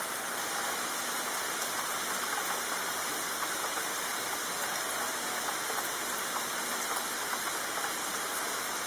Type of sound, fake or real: real